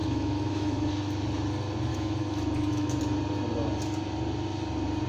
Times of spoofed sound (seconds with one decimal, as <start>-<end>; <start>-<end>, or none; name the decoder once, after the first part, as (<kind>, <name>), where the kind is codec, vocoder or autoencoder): 0.0-0.9 (autoencoder, DAC-VAE); 1.9-3.0